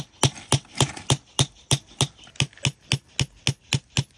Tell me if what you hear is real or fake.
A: real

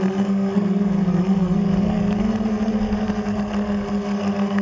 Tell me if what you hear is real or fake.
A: fake